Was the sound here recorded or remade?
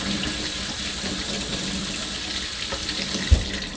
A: recorded